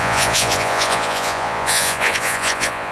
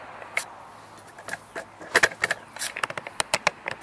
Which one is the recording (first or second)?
second